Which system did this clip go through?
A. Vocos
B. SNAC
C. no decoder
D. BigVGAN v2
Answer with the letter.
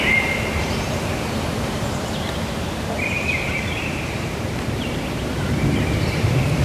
D